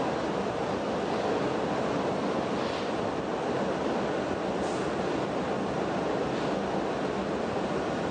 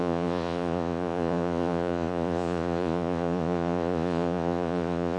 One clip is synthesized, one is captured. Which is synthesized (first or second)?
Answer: second